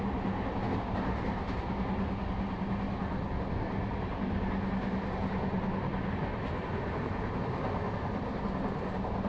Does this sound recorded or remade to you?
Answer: recorded